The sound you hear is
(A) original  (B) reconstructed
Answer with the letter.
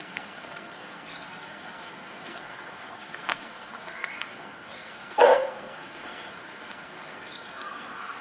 B